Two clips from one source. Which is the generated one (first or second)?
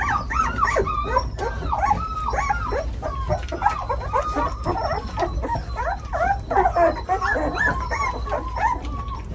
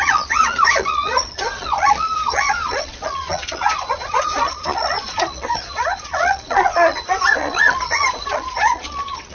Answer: second